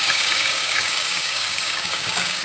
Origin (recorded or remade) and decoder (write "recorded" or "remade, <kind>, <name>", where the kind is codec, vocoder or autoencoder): remade, codec, DAC